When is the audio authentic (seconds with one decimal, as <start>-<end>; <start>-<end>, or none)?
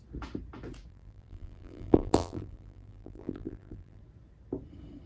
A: 0.0-0.9; 4.0-5.1